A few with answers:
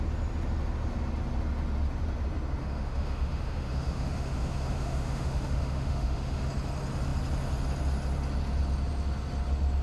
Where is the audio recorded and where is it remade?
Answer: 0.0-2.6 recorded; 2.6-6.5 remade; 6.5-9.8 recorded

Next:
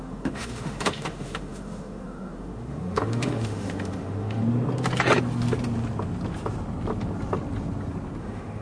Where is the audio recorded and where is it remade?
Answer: 0.0-4.4 remade; 4.4-8.2 recorded; 8.2-8.6 remade

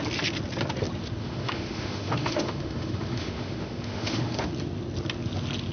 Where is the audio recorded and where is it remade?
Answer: 0.0-1.2 recorded; 1.2-4.5 remade; 4.5-5.7 recorded

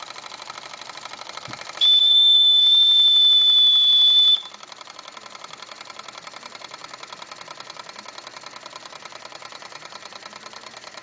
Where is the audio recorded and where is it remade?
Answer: 0.0-2.0 recorded; 2.0-2.6 remade; 2.6-11.0 recorded

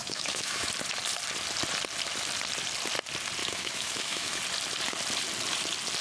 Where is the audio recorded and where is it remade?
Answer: 0.0-0.7 remade; 0.7-3.4 recorded; 3.4-4.4 remade; 4.4-6.0 recorded

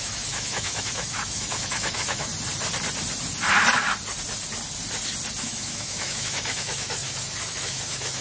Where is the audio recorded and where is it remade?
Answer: 0.0-2.3 remade; 2.3-5.4 recorded; 5.4-8.2 remade

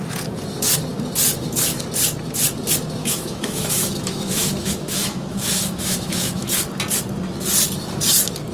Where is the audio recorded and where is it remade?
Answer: 0.0-3.0 recorded; 3.0-6.5 remade; 6.5-8.5 recorded

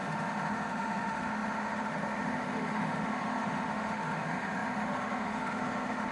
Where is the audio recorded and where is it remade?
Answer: 0.0-6.1 remade